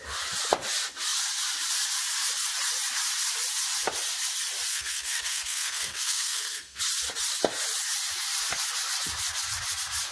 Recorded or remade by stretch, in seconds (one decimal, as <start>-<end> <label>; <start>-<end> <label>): 0.0-4.7 recorded; 4.7-6.8 remade; 6.8-10.1 recorded